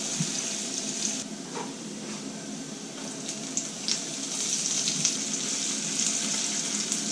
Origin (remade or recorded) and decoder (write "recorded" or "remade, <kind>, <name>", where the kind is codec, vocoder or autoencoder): recorded